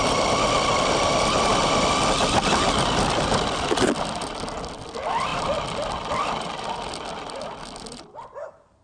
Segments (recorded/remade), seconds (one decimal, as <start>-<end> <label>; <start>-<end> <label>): 0.0-8.8 recorded